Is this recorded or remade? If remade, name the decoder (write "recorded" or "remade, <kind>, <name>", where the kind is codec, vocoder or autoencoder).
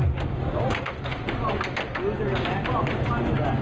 recorded